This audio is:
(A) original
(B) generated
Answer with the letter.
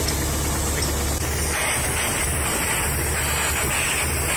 A